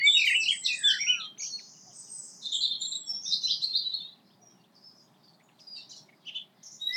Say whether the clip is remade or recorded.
recorded